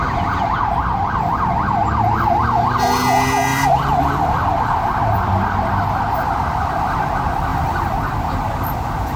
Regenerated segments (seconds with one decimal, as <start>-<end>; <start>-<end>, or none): 3.5-6.0; 7.5-8.1